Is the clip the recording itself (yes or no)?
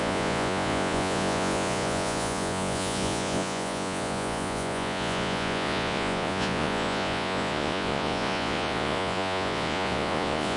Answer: no